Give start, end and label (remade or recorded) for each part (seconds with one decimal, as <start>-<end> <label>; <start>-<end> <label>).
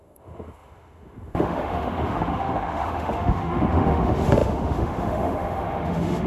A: 0.0-6.3 remade